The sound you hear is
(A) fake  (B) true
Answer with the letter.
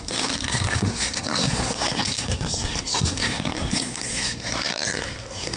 A